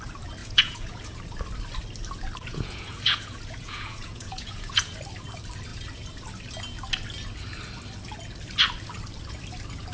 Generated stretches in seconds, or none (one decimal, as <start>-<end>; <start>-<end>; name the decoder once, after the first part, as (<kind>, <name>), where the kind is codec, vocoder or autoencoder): 0.4-1.2 (vocoder, Vocos); 2.5-5.0